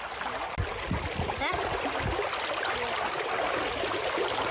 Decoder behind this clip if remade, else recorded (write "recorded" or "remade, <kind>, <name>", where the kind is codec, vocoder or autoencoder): recorded